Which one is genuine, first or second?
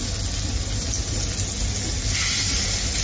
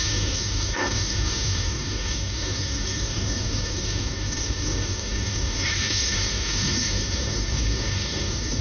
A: first